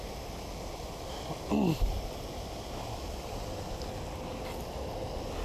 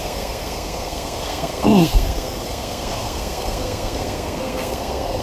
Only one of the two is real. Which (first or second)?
first